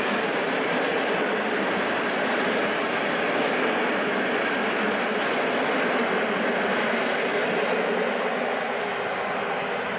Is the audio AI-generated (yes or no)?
no